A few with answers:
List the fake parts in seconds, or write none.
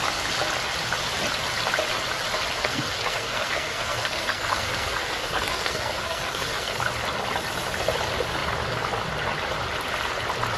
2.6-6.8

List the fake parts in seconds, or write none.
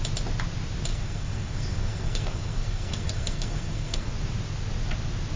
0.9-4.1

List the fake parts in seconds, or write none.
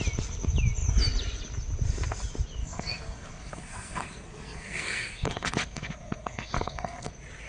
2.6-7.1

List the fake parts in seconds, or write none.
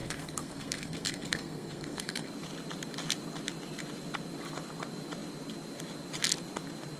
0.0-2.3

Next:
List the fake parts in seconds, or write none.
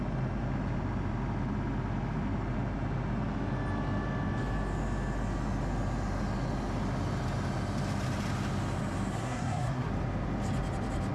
9.1-9.9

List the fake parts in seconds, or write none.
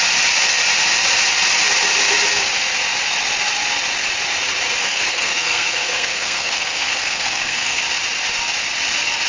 4.8-7.8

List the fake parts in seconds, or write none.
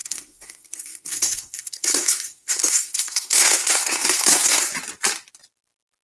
0.0-4.7